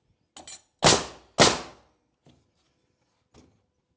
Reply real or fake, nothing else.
real